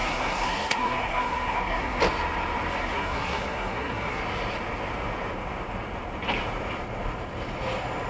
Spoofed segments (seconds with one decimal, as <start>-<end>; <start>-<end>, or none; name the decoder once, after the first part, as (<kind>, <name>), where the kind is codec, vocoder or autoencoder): 0.0-2.0 (codec, SNAC); 2.8-4.2